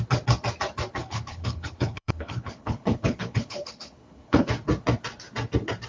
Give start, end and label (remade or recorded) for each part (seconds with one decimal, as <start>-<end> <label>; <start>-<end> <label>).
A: 0.0-1.0 recorded; 1.0-4.5 remade; 4.5-5.9 recorded